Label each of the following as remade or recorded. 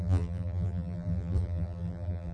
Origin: remade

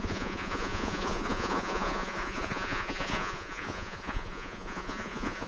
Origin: remade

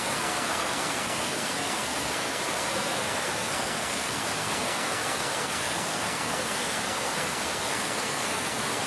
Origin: remade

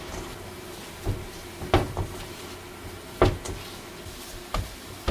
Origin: recorded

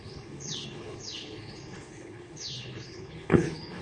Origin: remade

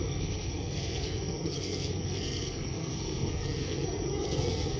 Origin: remade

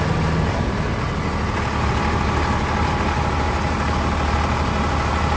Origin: recorded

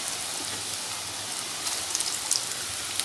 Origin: recorded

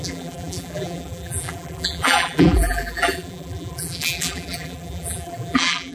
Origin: remade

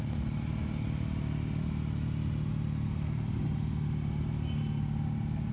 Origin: recorded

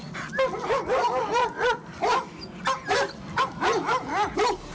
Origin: recorded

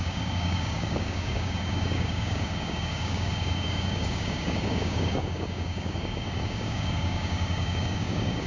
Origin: remade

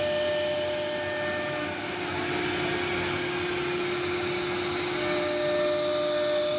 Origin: recorded